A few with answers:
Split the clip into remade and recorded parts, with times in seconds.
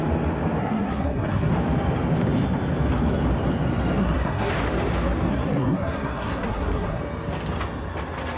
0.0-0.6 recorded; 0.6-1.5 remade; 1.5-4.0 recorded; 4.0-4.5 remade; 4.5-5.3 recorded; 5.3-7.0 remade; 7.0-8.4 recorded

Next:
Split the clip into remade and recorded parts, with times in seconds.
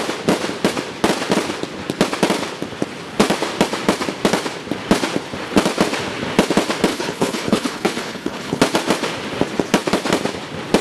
0.0-6.9 recorded; 6.9-8.6 remade; 8.6-10.8 recorded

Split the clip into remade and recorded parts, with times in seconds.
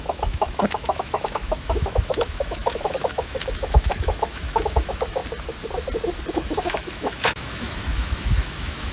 0.0-5.2 remade; 5.2-6.3 recorded; 6.3-8.9 remade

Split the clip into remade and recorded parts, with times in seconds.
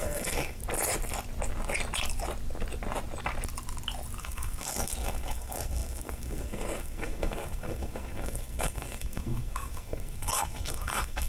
0.0-0.6 remade; 0.6-4.2 recorded; 4.2-11.3 remade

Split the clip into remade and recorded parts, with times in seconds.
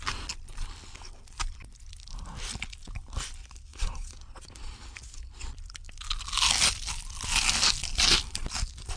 0.0-3.7 recorded; 3.7-4.5 remade; 4.5-9.0 recorded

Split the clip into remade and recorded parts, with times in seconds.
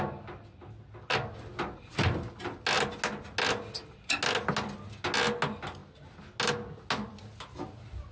0.0-8.1 recorded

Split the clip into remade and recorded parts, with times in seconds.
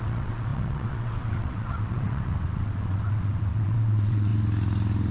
0.0-4.3 remade; 4.3-5.1 recorded